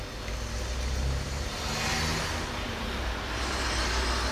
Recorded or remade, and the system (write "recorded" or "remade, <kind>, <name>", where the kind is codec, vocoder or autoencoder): recorded